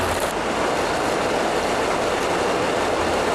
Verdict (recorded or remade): recorded